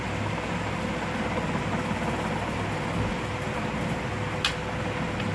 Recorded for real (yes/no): yes